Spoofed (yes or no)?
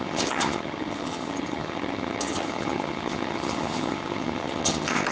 yes